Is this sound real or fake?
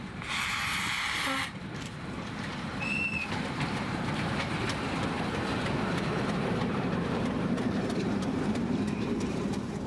fake